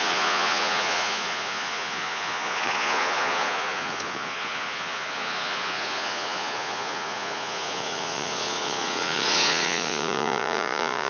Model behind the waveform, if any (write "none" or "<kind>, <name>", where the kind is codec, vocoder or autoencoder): vocoder, Vocos